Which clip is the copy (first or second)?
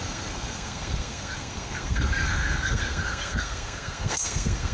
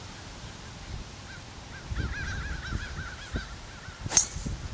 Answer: first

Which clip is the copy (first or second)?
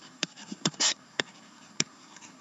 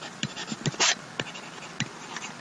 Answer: first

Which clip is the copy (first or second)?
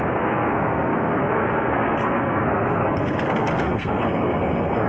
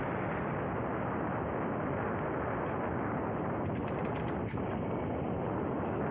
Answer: first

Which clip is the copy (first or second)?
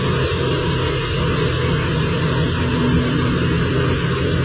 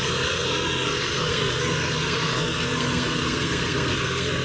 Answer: second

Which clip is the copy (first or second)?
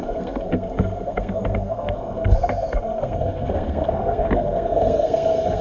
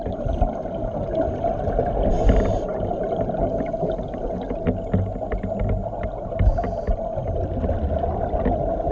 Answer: first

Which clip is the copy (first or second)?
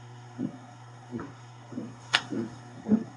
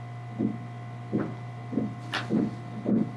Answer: first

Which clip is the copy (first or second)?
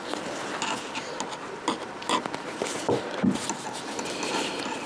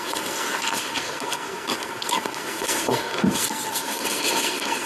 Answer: second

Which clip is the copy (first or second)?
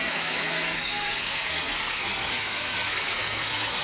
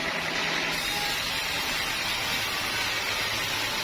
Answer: first